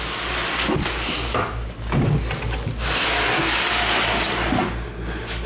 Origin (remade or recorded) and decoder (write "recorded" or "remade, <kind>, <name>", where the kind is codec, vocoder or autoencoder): recorded